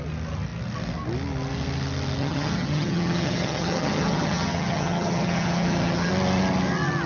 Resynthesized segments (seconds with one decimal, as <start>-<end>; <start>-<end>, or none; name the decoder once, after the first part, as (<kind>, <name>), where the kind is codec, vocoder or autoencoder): 2.2-6.1 (vocoder, HiFi-GAN)